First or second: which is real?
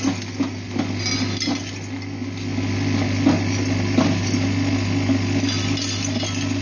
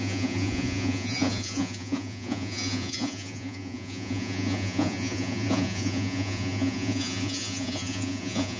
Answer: first